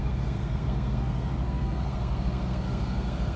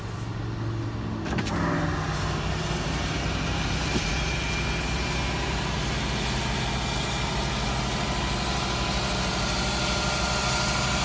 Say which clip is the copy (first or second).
first